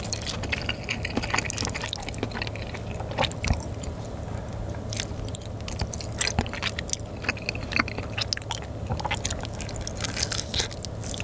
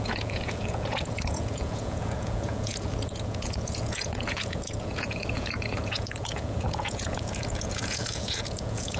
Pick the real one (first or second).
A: first